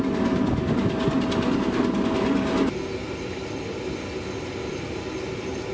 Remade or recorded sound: recorded